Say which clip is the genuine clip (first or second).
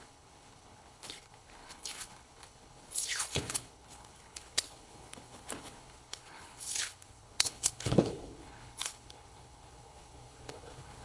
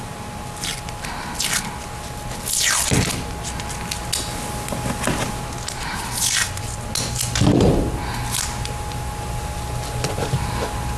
second